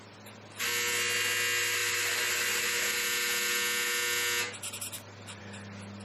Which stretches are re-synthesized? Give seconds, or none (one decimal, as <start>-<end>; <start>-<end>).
none